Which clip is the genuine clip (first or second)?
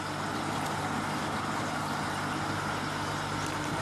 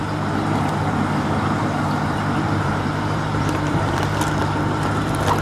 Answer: first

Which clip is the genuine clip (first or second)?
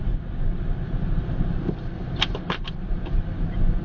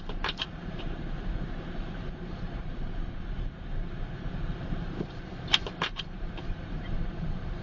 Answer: first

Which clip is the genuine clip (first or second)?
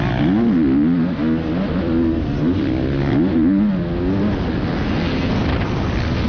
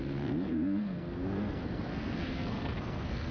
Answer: first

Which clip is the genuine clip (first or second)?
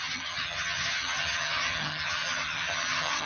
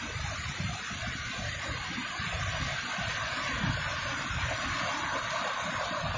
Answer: second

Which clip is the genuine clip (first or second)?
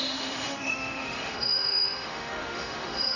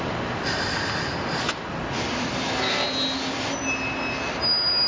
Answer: second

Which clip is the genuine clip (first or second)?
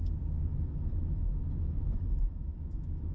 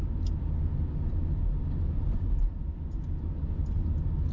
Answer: second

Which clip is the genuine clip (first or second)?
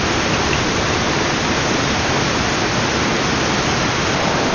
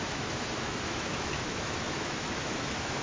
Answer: first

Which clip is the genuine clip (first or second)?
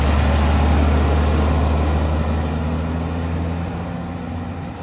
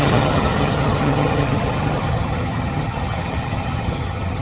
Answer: first